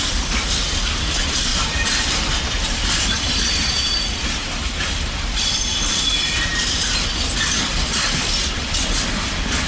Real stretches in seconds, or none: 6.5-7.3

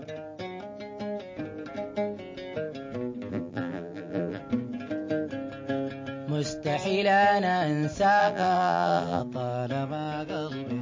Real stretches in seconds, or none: 0.0-3.3; 4.4-8.2; 9.2-10.8

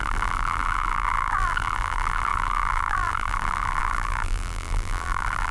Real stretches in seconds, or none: none

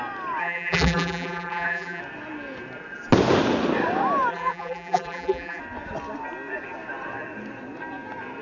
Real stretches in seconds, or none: 0.0-0.4; 2.0-4.3; 5.6-8.4

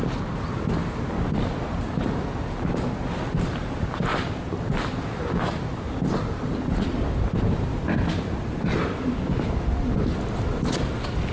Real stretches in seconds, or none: 0.0-4.1; 5.3-5.7; 8.3-11.3

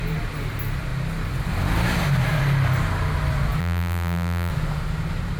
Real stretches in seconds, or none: 0.0-3.6; 4.5-5.4

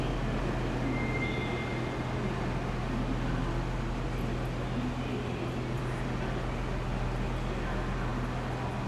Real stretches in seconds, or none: 0.0-8.9